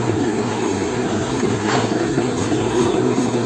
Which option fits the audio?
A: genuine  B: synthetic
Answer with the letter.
B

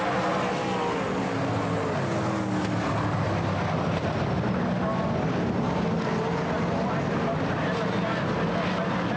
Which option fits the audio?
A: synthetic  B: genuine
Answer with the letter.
B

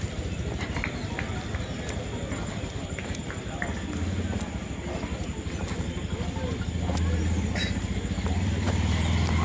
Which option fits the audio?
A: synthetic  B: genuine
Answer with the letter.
B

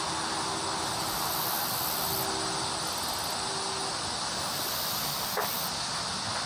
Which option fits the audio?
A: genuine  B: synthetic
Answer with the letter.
A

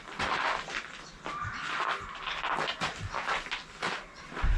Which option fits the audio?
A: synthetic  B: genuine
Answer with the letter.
B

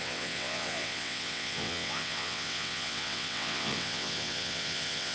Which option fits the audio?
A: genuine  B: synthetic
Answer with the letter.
B